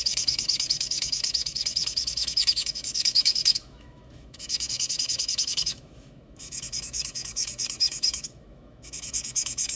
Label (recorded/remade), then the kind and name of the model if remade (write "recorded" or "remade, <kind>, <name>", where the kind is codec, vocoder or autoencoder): remade, autoencoder, DAC-VAE